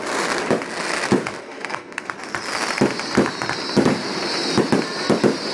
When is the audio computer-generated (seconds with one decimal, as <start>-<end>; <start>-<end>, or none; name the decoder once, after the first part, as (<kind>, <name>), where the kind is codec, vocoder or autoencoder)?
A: 1.4-2.1 (codec, SNAC)